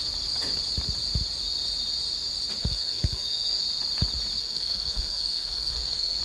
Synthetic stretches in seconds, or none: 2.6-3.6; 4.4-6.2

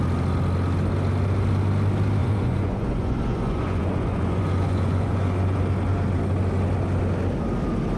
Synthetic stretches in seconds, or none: 2.2-5.6